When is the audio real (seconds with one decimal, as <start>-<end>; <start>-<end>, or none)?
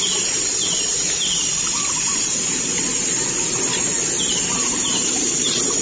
0.0-5.8